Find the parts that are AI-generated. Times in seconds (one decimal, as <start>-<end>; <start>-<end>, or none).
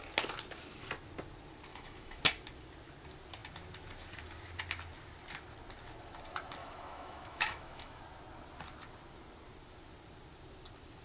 1.7-2.2; 6.6-8.0